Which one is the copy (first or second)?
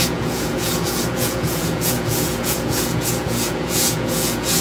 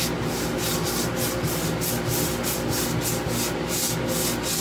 first